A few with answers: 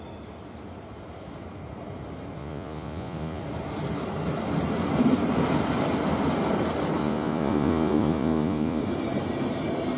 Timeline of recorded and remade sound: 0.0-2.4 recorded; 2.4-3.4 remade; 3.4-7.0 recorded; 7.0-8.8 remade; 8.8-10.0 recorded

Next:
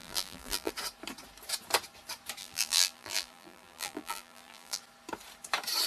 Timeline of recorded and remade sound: 0.0-0.7 remade; 0.7-2.4 recorded; 2.4-4.8 remade; 4.8-5.9 recorded

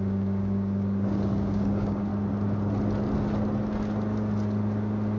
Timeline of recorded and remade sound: 0.0-2.1 remade; 2.1-5.2 recorded

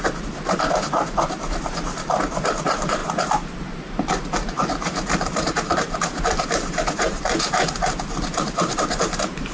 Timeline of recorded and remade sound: 0.0-3.0 remade; 3.0-3.6 recorded; 3.6-9.5 remade

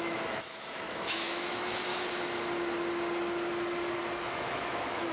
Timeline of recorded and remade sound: 0.0-1.9 remade; 1.9-4.0 recorded; 4.0-5.1 remade

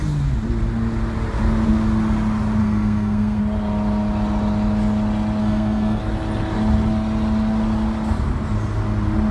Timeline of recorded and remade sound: 0.0-2.6 recorded; 2.6-3.4 remade; 3.4-5.4 recorded; 5.4-6.0 remade; 6.0-9.3 recorded

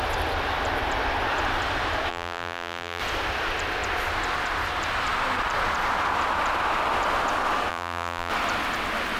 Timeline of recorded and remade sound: 0.0-2.1 recorded; 2.1-3.0 remade; 3.0-7.7 recorded; 7.7-8.3 remade; 8.3-9.2 recorded

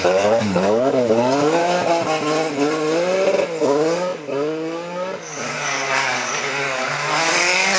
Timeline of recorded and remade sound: 0.0-1.6 remade; 1.6-3.6 recorded; 3.6-7.8 remade